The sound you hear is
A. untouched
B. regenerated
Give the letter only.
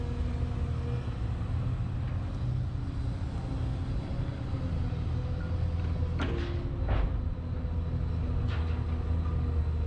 A